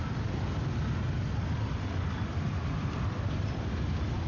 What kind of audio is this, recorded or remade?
recorded